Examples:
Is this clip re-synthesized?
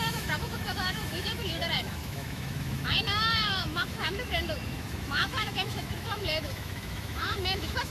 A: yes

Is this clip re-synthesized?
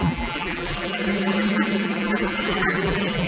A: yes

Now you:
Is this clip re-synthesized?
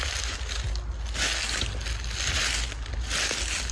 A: no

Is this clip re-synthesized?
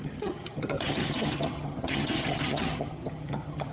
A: yes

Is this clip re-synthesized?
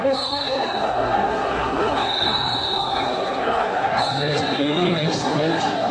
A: yes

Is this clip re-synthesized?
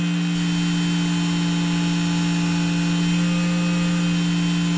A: no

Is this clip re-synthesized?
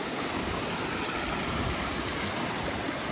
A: no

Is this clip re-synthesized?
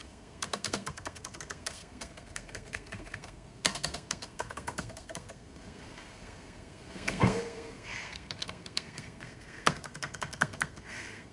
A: yes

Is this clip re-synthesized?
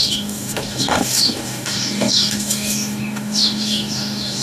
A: yes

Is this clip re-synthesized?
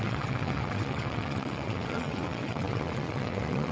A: yes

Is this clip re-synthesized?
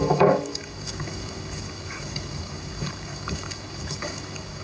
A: yes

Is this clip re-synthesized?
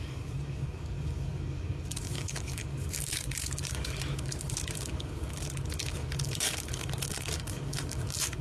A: yes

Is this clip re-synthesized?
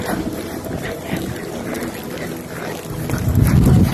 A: no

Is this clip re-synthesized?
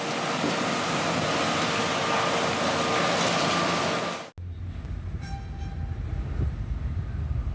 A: no